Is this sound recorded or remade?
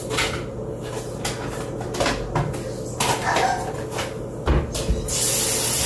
recorded